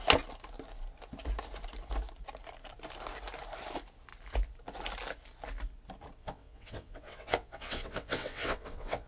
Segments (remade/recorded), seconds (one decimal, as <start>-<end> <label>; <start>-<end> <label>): 0.0-6.2 recorded; 6.2-9.1 remade